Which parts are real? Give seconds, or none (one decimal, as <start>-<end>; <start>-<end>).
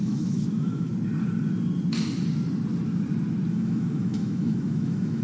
0.9-3.5